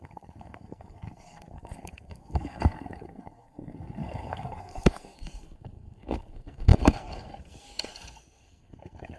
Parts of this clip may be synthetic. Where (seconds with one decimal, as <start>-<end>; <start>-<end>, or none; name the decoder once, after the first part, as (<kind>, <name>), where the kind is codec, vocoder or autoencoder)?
0.0-9.2 (codec, SNAC)